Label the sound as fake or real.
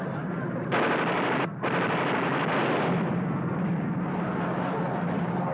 real